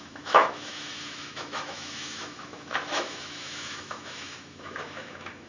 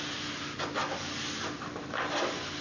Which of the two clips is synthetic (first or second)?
first